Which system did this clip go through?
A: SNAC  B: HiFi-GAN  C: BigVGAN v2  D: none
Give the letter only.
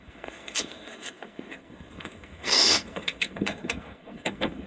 A